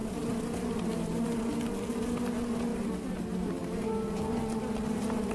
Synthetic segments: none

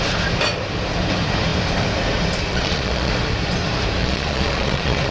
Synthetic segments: 2.5-3.1; 4.0-5.1

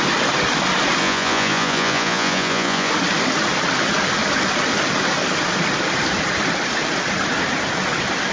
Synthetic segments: 1.0-2.9

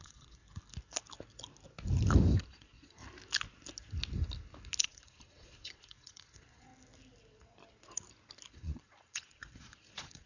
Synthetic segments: 0.0-0.4; 2.5-3.0; 4.8-6.7; 8.5-10.3